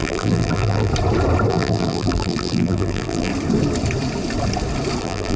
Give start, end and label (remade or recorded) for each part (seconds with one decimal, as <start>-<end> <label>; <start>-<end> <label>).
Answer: 0.0-0.9 remade; 0.9-1.5 recorded; 1.5-3.3 remade; 3.3-5.0 recorded; 5.0-5.4 remade